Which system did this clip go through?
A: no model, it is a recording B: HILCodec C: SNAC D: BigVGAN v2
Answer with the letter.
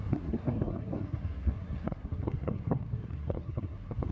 C